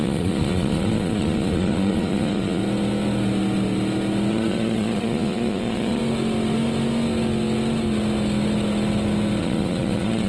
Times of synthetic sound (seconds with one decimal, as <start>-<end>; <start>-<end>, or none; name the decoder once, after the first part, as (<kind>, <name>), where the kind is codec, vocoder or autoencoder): 0.0-2.6 (vocoder, Vocos); 4.3-6.0; 9.4-10.3